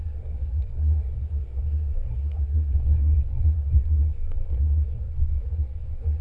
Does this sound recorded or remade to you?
remade